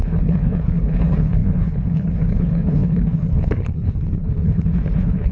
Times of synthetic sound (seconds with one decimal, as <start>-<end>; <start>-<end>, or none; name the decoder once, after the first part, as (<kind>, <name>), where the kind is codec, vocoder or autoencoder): 0.0-5.3 (codec, HILCodec)